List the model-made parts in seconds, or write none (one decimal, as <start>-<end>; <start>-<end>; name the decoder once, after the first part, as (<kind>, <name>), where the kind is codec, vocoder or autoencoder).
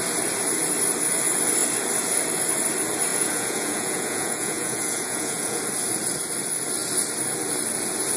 3.1-5.6 (vocoder, Vocos)